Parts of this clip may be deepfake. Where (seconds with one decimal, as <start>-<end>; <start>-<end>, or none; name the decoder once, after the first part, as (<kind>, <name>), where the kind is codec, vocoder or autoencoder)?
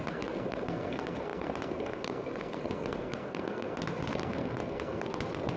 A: 0.0-5.6 (codec, SNAC)